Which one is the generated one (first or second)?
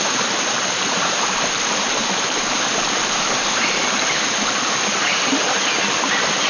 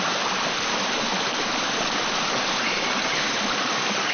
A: first